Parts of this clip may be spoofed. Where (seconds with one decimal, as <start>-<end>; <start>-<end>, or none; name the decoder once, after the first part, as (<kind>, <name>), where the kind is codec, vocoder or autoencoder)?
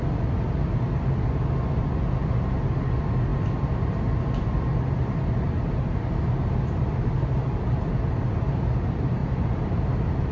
3.3-5.2 (vocoder, BigVGAN v2); 9.2-9.8